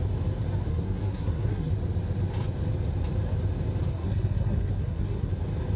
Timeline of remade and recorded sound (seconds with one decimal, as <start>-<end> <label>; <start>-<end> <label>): 0.0-0.7 recorded; 0.7-1.7 remade; 1.7-3.9 recorded; 3.9-5.3 remade; 5.3-5.8 recorded